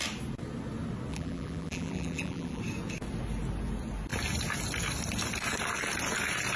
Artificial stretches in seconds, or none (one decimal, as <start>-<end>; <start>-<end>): 1.1-2.6